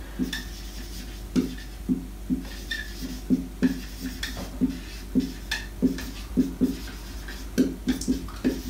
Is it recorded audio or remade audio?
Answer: recorded